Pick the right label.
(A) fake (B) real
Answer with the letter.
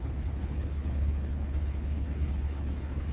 A